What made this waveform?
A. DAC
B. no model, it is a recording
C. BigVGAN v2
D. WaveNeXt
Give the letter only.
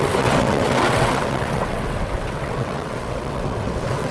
D